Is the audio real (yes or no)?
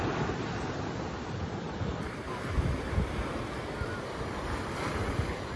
yes